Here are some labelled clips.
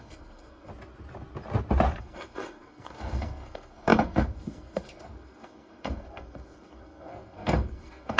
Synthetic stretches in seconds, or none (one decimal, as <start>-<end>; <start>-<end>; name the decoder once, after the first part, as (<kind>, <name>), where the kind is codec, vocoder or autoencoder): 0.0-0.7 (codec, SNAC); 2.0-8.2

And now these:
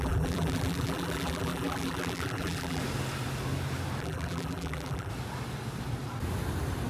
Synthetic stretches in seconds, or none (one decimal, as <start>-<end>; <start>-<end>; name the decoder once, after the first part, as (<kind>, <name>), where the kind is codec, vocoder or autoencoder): 0.0-2.8 (vocoder, BigVGAN v2); 4.0-5.1

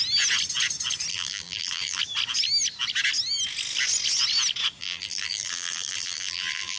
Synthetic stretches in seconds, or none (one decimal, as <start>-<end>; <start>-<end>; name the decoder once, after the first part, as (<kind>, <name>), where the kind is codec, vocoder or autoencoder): 1.1-2.0 (vocoder, BigVGAN v2); 4.8-6.8

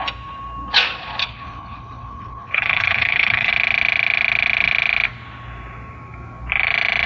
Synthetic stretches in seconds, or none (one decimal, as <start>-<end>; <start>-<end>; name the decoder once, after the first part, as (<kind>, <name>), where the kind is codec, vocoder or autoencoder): 1.2-3.5 (codec, HILCodec)

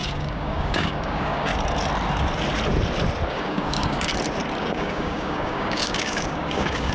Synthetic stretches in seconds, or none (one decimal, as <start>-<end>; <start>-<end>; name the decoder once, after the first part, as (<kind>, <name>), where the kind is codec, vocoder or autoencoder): 0.0-1.5 (codec, DAC); 3.3-4.1; 4.6-6.9

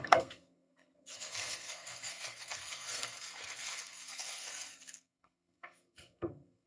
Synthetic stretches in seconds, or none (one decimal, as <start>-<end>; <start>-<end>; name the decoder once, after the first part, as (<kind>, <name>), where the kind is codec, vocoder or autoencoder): 0.0-6.7 (codec, SNAC)